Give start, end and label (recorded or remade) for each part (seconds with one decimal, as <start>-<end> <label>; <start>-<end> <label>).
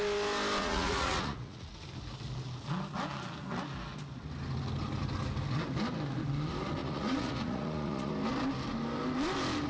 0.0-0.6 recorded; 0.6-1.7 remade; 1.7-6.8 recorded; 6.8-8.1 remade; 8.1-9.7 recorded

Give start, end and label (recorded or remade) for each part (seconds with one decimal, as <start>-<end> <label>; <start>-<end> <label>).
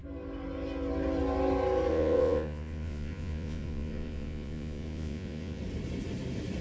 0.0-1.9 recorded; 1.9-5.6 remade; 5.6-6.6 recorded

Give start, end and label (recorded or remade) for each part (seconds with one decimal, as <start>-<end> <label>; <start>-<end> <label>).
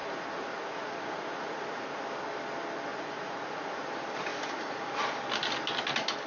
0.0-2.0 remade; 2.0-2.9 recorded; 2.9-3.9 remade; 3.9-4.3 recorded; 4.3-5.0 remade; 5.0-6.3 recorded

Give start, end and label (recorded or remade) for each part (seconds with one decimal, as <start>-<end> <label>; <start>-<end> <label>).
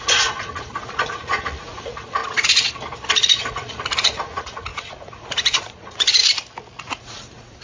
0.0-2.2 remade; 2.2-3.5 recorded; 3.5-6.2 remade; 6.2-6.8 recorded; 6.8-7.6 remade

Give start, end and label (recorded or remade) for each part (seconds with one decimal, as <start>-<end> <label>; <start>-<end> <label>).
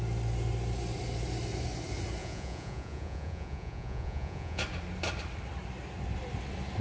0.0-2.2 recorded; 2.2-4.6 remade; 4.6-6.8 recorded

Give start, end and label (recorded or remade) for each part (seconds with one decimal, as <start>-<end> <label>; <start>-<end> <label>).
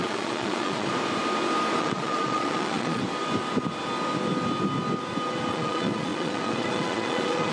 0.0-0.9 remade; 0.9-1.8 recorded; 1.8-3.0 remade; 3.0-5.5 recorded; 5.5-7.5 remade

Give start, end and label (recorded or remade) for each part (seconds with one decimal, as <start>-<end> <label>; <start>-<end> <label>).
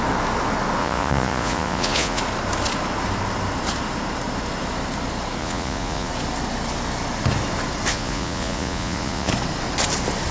0.0-0.8 recorded; 0.8-2.2 remade; 2.2-5.4 recorded; 5.4-6.1 remade; 6.1-7.9 recorded; 7.9-9.3 remade; 9.3-10.3 recorded